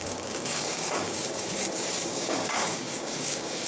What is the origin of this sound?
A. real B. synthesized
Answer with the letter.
B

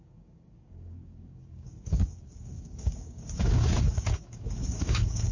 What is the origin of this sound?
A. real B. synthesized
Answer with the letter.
B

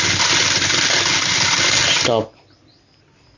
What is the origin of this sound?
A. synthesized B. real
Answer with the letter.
B